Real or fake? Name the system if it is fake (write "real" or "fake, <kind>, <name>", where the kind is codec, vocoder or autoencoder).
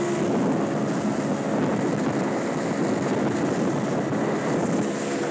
real